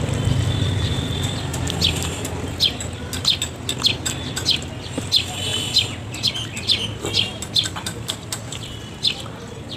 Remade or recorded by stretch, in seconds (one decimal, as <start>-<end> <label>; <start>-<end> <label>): 0.0-9.8 recorded